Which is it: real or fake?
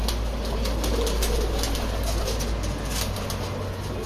real